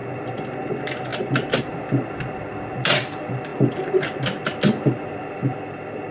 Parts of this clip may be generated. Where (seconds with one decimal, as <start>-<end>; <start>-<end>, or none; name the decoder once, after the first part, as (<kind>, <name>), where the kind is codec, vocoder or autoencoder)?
1.1-1.6 (vocoder, BigVGAN v2)

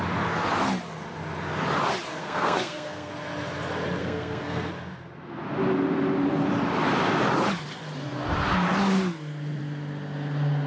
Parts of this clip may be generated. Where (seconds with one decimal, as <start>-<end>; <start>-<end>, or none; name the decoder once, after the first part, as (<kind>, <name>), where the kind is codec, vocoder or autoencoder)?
2.2-3.1 (codec, SNAC); 4.0-4.7